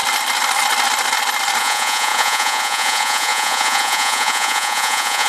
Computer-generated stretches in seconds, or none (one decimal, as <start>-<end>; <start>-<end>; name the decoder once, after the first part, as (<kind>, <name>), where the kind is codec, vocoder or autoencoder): 1.6-5.3 (vocoder, Vocos)